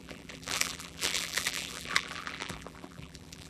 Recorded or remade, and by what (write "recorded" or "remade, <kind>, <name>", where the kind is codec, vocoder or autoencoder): remade, vocoder, BigVGAN v2